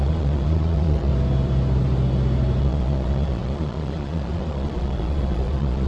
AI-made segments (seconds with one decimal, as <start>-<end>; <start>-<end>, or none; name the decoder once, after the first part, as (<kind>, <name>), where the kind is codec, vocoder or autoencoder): 0.0-1.1 (vocoder, Vocos); 2.6-5.9